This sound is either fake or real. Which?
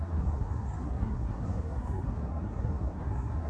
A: fake